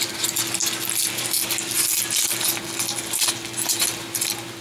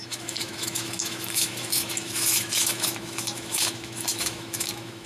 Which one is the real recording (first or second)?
first